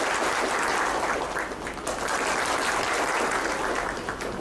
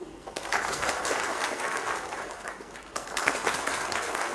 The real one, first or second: first